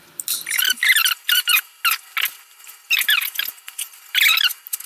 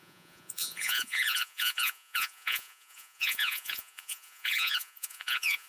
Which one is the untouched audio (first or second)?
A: first